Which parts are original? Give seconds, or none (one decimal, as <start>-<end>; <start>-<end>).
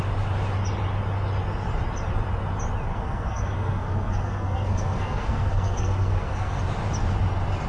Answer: 0.0-2.9; 6.6-7.7